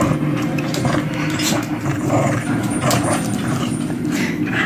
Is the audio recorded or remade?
remade